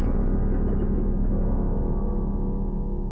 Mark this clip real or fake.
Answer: real